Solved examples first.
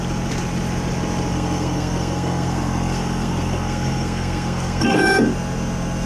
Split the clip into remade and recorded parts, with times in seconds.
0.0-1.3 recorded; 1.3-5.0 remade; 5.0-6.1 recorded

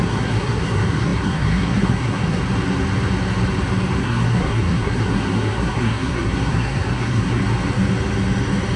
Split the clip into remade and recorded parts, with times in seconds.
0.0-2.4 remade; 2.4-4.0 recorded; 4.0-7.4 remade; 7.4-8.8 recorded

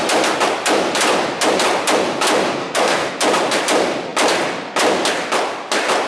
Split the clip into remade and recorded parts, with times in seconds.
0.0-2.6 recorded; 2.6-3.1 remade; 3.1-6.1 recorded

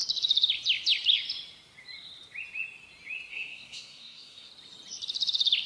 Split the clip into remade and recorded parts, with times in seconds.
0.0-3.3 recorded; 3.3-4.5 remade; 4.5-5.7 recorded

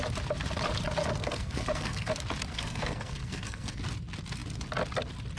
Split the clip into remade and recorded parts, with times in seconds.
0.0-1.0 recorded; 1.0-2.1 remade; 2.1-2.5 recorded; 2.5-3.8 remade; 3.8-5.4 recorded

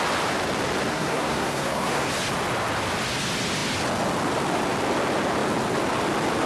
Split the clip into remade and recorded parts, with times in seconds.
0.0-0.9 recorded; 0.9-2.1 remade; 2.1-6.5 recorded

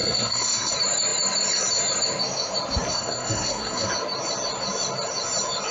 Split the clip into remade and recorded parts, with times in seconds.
0.0-0.7 remade; 0.7-2.9 recorded; 2.9-3.9 remade; 3.9-5.7 recorded

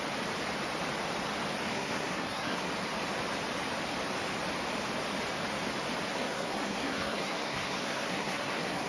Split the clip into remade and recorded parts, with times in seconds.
0.0-1.7 recorded; 1.7-2.7 remade; 2.7-6.1 recorded; 6.1-8.9 remade